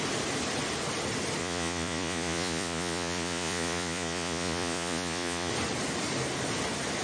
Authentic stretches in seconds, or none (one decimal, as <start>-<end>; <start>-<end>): 0.0-1.4; 5.5-7.0